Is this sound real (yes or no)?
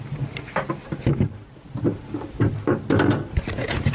yes